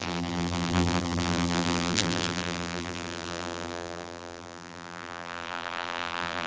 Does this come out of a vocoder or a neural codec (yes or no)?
yes